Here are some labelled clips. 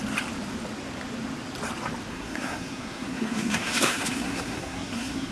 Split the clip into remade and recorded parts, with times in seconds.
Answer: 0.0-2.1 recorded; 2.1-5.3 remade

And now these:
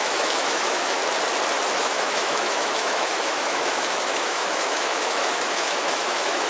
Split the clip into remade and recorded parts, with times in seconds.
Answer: 0.0-1.0 remade; 1.0-1.7 recorded; 1.7-6.5 remade

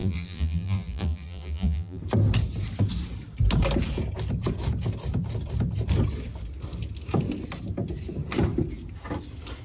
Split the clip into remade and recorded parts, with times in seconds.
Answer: 0.0-2.0 remade; 2.0-9.6 recorded

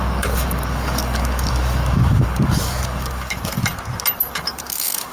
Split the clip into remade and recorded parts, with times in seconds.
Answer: 0.0-3.6 remade; 3.6-4.2 recorded; 4.2-5.1 remade

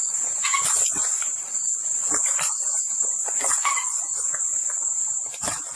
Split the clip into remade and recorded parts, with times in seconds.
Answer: 0.0-5.8 recorded

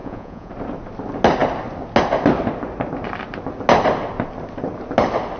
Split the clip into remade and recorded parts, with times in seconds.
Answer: 0.0-0.5 remade; 0.5-5.4 recorded

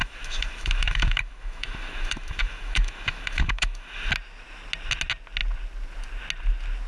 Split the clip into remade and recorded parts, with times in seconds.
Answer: 0.0-4.1 remade; 4.1-6.9 recorded

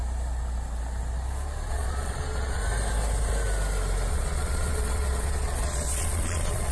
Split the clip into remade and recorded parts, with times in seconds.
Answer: 0.0-1.7 recorded; 1.7-2.6 remade; 2.6-4.1 recorded; 4.1-6.7 remade